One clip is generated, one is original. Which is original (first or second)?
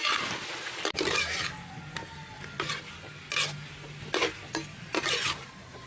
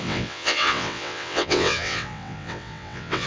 first